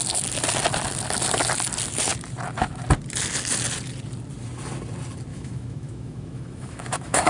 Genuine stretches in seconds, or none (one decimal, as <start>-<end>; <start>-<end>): 0.0-5.3